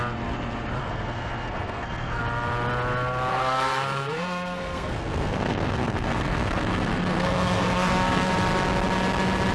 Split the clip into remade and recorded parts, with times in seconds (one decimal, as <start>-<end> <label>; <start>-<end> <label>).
0.0-0.8 recorded; 0.8-2.2 remade; 2.2-3.3 recorded; 3.3-8.3 remade; 8.3-9.5 recorded